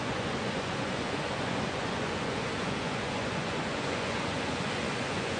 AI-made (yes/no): yes